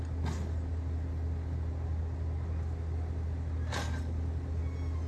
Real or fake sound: real